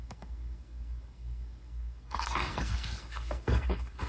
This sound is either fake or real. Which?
fake